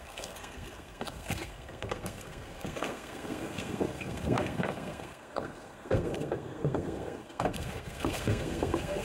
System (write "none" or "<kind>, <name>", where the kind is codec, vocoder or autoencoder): codec, SNAC